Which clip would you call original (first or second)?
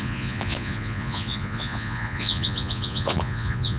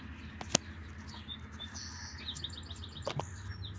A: second